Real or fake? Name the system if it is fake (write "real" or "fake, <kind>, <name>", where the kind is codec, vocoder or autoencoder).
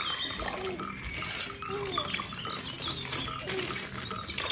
real